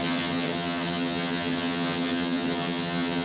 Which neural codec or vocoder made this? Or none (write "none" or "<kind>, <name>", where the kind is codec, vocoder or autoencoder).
vocoder, HiFi-GAN